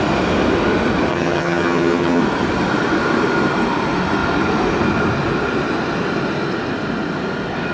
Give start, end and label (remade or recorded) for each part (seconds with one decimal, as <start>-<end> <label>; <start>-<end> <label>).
0.0-1.1 recorded; 1.1-2.2 remade; 2.2-7.7 recorded